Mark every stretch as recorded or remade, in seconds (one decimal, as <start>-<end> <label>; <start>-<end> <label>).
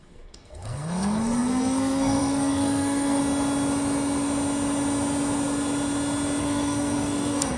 0.0-3.2 remade; 3.2-6.4 recorded; 6.4-7.6 remade